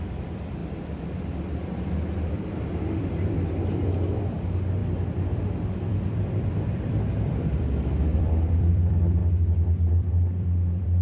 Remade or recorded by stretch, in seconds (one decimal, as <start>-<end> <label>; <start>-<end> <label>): 0.0-0.6 remade; 0.6-2.1 recorded; 2.1-4.8 remade; 4.8-5.5 recorded; 5.5-9.2 remade; 9.2-9.9 recorded; 9.9-11.0 remade